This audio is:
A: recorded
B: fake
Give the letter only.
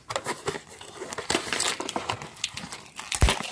A